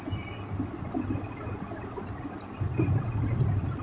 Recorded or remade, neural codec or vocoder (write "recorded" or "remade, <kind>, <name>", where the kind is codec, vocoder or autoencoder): remade, vocoder, BigVGAN v2